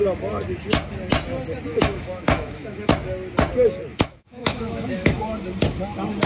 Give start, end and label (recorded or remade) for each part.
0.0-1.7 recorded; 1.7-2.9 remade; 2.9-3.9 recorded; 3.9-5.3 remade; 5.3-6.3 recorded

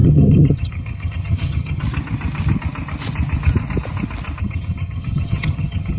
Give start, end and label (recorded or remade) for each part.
0.0-1.8 remade; 1.8-4.4 recorded; 4.4-6.0 remade

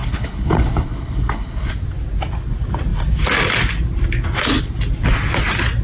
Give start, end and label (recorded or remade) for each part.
0.0-1.7 remade; 1.7-5.8 recorded

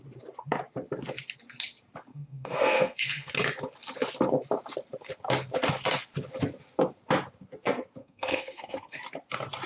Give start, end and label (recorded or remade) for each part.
0.0-2.1 recorded; 2.1-3.3 remade; 3.3-8.0 recorded; 8.0-9.0 remade; 9.0-9.7 recorded

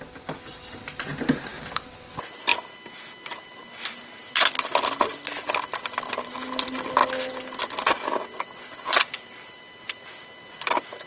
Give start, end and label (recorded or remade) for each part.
0.0-11.1 recorded

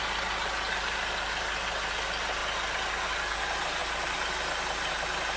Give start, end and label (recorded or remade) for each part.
0.0-5.4 recorded

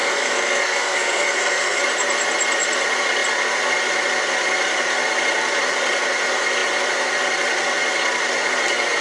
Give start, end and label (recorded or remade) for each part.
0.0-1.8 remade; 1.8-9.0 recorded

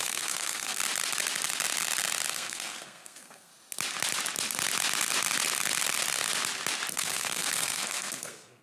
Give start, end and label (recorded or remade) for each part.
0.0-0.8 remade; 0.8-2.3 recorded; 2.3-3.5 remade; 3.5-6.9 recorded; 6.9-8.6 remade